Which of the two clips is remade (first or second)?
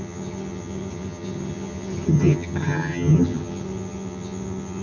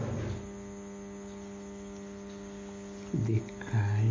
first